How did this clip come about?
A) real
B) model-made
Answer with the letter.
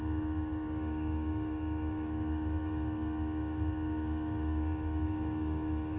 B